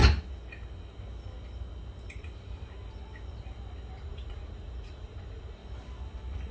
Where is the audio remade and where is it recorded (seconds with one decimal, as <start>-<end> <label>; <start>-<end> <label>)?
0.0-3.9 recorded; 3.9-5.6 remade; 5.6-6.5 recorded